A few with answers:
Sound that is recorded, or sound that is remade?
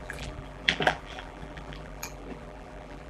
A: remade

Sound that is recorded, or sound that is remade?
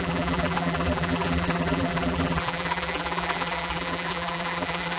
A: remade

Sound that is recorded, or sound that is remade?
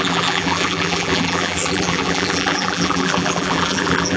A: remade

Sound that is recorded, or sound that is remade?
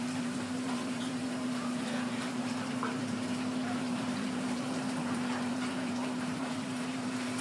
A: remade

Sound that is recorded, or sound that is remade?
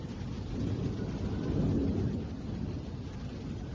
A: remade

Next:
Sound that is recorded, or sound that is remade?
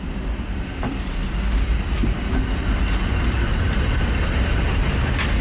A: remade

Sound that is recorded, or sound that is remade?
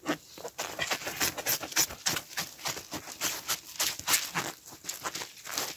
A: recorded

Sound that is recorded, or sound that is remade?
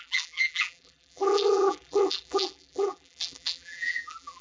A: remade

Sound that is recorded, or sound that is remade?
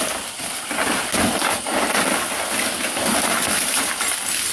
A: recorded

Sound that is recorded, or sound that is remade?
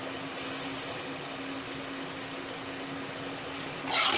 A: recorded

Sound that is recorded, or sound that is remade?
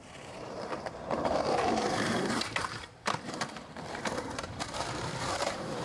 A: remade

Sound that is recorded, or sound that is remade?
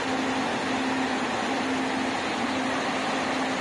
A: recorded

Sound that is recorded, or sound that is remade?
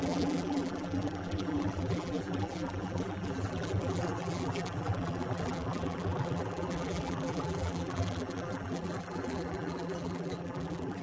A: remade